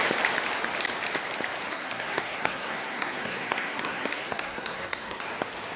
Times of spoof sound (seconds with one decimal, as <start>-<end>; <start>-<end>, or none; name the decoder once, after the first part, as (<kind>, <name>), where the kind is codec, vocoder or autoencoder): 1.7-5.2 (codec, SNAC)